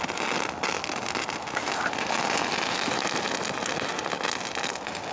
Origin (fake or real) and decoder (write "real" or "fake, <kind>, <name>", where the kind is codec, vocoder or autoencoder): real